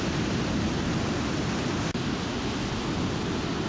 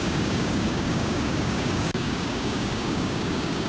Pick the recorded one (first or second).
first